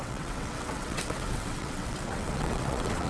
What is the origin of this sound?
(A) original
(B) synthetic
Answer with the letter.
B